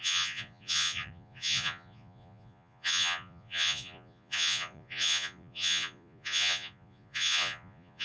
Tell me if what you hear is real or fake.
fake